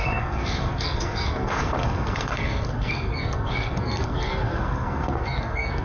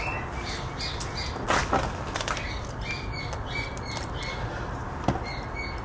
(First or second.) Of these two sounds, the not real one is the first